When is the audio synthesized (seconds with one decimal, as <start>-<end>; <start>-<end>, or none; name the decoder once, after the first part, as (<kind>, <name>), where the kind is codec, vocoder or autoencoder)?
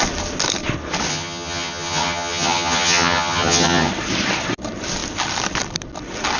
1.1-3.9 (vocoder, HiFi-GAN)